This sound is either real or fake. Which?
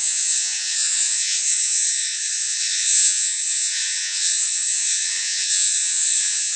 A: fake